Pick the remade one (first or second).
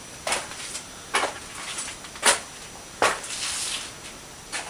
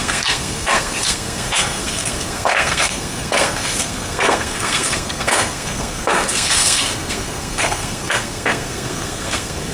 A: second